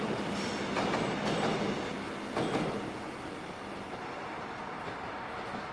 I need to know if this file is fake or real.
real